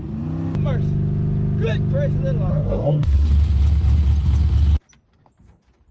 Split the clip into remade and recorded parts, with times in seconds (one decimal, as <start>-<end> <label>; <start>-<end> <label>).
0.0-2.5 recorded; 2.5-3.3 remade; 3.3-5.9 recorded